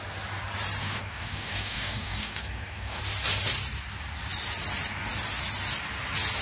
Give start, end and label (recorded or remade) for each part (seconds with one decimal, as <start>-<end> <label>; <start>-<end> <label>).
0.0-0.8 recorded; 0.8-3.0 remade; 3.0-6.4 recorded